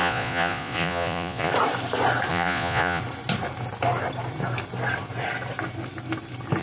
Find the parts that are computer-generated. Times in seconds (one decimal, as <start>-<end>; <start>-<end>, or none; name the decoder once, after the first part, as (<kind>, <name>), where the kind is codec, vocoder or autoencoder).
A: 0.0-1.5 (vocoder, Vocos); 2.3-3.0